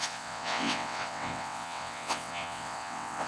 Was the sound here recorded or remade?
remade